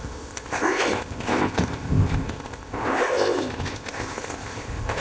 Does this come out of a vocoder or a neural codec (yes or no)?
yes